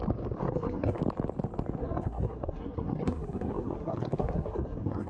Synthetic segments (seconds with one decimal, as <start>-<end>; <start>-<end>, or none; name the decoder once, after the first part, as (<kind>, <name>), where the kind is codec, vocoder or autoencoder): 0.4-1.0 (codec, SNAC); 1.8-5.1

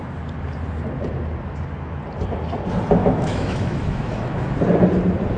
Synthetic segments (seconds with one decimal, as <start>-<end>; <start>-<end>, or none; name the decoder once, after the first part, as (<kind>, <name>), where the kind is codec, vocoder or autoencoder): 3.0-4.6 (autoencoder, DAC-VAE)

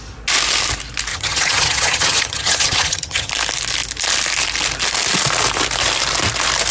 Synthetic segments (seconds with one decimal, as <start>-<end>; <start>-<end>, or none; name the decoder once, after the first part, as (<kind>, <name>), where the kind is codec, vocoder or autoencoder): 1.1-3.3 (vocoder, HiFi-GAN)

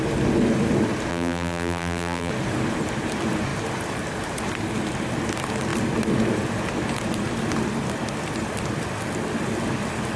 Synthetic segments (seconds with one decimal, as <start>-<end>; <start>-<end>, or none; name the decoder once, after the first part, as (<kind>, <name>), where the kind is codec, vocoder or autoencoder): 1.1-2.3 (vocoder, BigVGAN v2)

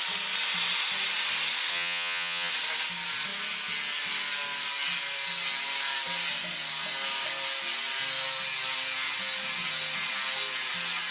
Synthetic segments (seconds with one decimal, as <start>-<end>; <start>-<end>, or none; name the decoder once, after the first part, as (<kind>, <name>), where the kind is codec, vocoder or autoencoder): 1.7-2.5 (vocoder, HiFi-GAN)

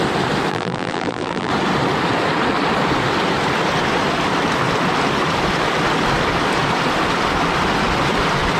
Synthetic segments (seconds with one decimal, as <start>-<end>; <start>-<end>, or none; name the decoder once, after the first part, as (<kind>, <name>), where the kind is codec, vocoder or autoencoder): 0.5-1.5 (vocoder, BigVGAN v2)

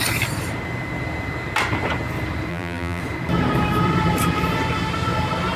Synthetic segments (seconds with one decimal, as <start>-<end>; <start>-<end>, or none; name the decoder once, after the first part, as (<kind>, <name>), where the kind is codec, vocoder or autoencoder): 2.5-3.0 (vocoder, BigVGAN v2)